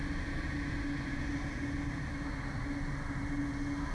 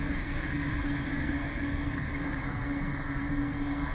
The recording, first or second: first